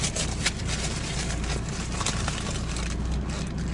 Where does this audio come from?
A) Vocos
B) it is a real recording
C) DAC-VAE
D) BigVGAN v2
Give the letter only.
B